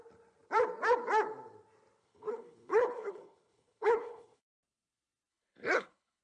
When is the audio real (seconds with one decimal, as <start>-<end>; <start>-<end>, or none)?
0.0-2.0; 4.5-5.3